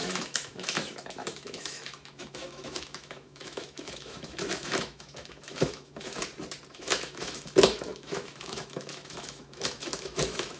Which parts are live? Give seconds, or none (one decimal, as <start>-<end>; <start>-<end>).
6.2-6.7